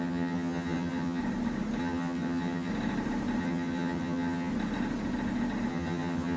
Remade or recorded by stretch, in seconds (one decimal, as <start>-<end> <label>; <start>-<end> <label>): 0.0-1.2 remade; 1.2-1.8 recorded; 1.8-2.7 remade; 2.7-3.4 recorded; 3.4-4.5 remade; 4.5-5.7 recorded; 5.7-6.4 remade